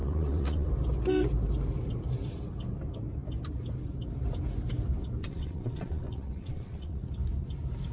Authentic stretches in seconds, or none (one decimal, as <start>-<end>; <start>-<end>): 0.7-5.2; 7.0-7.9